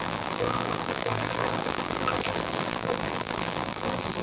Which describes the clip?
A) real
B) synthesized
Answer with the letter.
B